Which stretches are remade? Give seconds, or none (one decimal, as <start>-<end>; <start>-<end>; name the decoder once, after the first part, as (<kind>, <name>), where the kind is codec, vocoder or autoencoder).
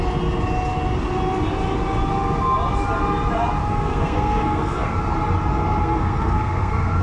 3.6-5.0 (codec, SNAC); 5.8-7.0